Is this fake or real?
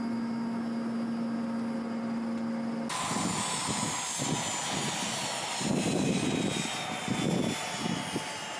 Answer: real